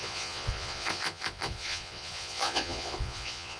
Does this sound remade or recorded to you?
remade